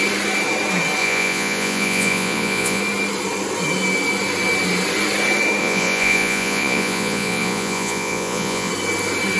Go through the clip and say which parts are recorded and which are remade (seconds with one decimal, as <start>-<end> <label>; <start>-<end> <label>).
0.0-1.0 recorded; 1.0-2.8 remade; 2.8-5.6 recorded; 5.6-8.7 remade; 8.7-9.4 recorded